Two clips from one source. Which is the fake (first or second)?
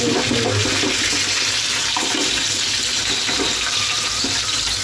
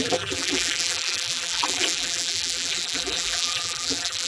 second